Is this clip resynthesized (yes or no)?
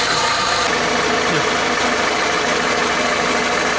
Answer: no